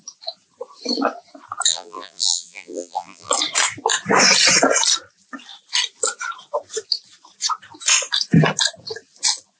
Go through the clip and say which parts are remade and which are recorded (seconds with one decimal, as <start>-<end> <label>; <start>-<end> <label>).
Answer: 0.0-1.7 recorded; 1.7-3.3 remade; 3.3-9.6 recorded